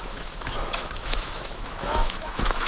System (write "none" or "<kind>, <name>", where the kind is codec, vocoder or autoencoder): autoencoder, DAC-VAE